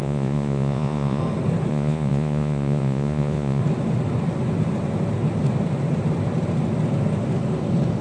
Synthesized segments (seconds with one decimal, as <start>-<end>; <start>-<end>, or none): 0.0-1.2; 1.7-3.6